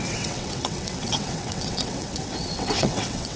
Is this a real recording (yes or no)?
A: no